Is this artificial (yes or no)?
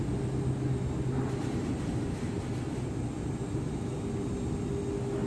no